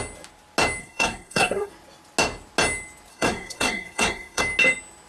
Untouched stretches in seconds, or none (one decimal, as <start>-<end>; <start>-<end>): 0.0-0.8; 1.7-3.1; 4.4-5.1